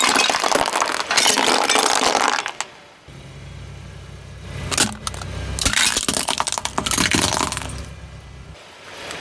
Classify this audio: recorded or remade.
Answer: recorded